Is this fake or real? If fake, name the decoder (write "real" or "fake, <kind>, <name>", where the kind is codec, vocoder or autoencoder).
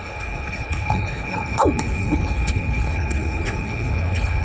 fake, codec, HILCodec